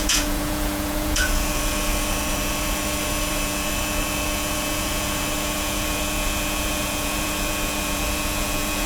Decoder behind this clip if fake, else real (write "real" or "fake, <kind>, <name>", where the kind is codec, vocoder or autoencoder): fake, vocoder, Vocos